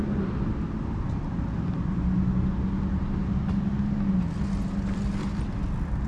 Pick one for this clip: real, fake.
real